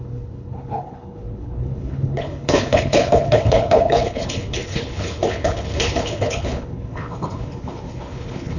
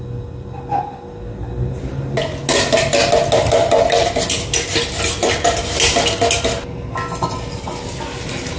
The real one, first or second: second